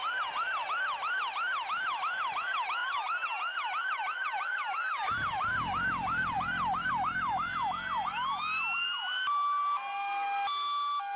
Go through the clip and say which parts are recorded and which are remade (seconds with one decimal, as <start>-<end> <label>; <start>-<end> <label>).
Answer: 0.0-11.2 recorded